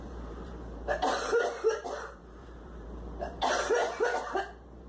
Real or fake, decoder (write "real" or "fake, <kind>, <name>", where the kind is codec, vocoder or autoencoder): fake, vocoder, BigVGAN v2